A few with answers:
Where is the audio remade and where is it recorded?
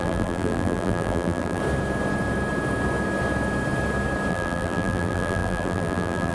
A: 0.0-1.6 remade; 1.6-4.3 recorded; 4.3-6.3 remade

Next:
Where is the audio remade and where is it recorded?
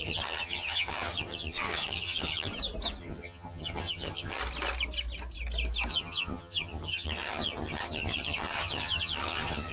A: 0.0-2.5 remade; 2.5-3.0 recorded; 3.0-4.4 remade; 4.4-5.9 recorded; 5.9-9.7 remade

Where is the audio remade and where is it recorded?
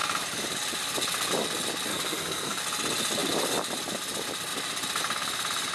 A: 0.0-1.9 recorded; 1.9-2.6 remade; 2.6-5.7 recorded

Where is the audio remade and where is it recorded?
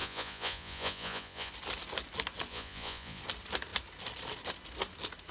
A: 0.0-1.5 remade; 1.5-2.5 recorded; 2.5-3.2 remade; 3.2-5.3 recorded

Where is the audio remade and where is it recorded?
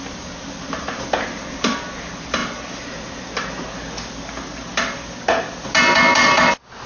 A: 0.0-6.9 recorded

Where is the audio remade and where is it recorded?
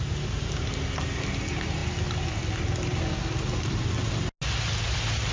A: 0.0-5.3 recorded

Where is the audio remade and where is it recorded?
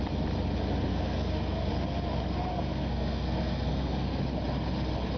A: 0.0-0.9 recorded; 0.9-1.7 remade; 1.7-2.5 recorded; 2.5-4.2 remade; 4.2-5.2 recorded